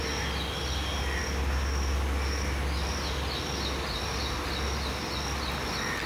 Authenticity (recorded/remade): recorded